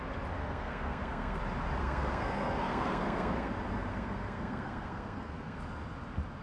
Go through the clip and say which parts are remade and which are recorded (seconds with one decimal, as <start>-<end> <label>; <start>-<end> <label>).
0.0-0.4 recorded; 0.4-1.4 remade; 1.4-1.8 recorded; 1.8-3.5 remade; 3.5-3.9 recorded; 3.9-5.6 remade; 5.6-6.4 recorded